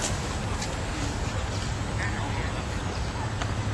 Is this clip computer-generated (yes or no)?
no